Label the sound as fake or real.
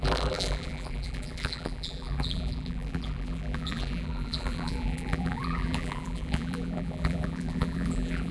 fake